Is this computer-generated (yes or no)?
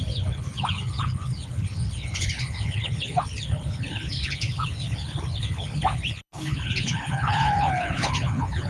yes